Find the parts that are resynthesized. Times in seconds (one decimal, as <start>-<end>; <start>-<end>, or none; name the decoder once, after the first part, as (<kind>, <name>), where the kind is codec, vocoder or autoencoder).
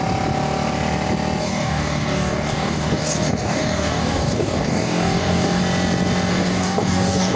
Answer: 1.4-5.6 (codec, DAC); 6.3-7.4